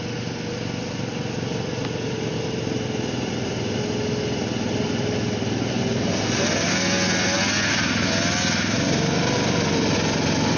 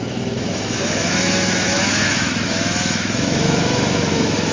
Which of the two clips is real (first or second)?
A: first